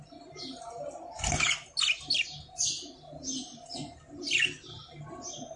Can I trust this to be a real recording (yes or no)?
yes